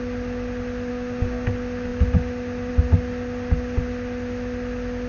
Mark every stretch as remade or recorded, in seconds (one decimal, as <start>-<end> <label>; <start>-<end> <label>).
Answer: 0.0-0.9 recorded; 0.9-1.5 remade; 1.5-5.1 recorded